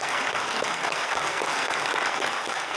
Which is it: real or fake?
fake